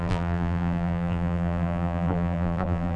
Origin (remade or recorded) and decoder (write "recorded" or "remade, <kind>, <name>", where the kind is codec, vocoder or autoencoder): remade, vocoder, BigVGAN v2